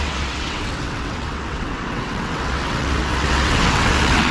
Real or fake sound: fake